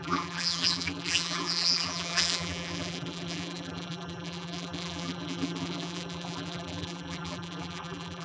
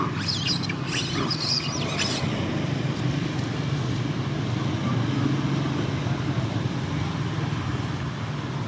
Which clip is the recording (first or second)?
second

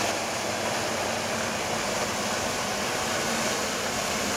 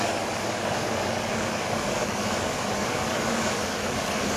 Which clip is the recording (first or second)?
first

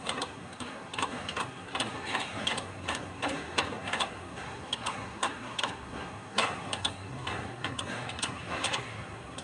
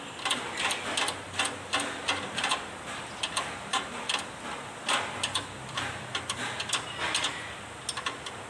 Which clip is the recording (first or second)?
second